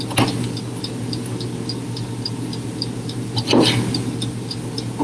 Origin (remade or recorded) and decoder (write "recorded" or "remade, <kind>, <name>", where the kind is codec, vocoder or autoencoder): recorded